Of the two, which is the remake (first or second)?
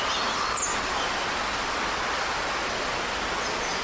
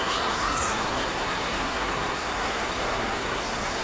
second